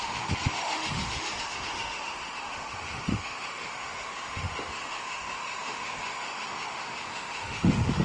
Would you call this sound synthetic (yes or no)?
yes